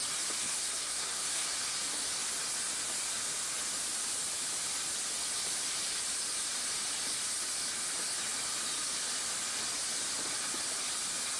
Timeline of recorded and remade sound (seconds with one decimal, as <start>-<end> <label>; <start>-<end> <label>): 0.0-0.4 recorded; 0.4-1.5 remade; 1.5-11.4 recorded